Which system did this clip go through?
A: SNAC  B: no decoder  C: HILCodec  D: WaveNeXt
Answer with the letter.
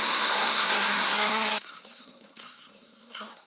A